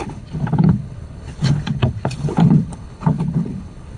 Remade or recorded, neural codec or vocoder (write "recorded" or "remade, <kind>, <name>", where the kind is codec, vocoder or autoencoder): remade, codec, HILCodec